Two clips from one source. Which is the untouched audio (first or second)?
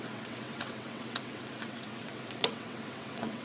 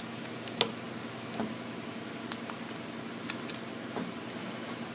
second